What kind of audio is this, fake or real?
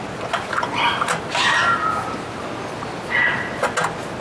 real